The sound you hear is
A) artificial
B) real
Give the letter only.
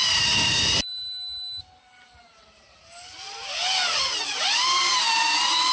B